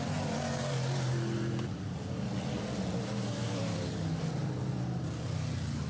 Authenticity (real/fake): real